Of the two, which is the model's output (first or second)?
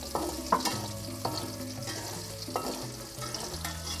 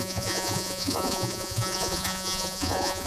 second